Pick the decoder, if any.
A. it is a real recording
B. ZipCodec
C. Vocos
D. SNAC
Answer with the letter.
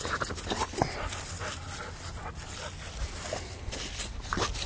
A